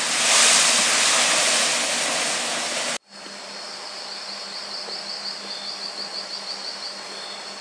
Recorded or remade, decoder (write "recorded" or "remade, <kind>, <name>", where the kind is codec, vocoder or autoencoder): recorded